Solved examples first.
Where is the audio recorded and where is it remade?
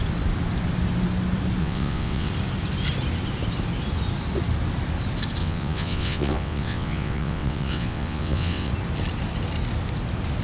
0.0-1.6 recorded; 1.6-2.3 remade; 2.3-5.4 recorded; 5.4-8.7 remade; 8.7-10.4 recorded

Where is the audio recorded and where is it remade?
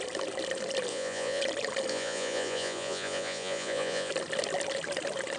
0.0-0.9 recorded; 0.9-1.4 remade; 1.4-1.9 recorded; 1.9-4.1 remade; 4.1-5.4 recorded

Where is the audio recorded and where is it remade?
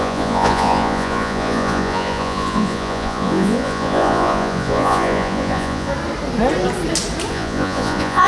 0.0-5.9 remade; 5.9-7.3 recorded; 7.3-8.3 remade